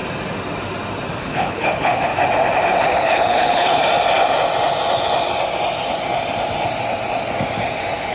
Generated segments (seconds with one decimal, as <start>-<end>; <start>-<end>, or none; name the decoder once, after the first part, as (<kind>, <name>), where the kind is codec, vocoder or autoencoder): 1.2-2.1 (codec, HILCodec); 2.8-3.8